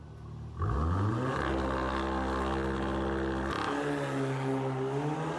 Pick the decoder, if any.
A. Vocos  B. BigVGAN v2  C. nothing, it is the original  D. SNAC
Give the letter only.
C